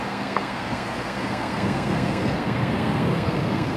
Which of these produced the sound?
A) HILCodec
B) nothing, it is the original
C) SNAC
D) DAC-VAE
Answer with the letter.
C